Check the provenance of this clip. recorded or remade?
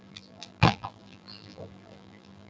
remade